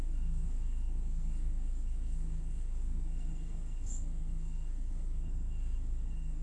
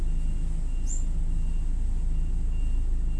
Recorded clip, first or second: second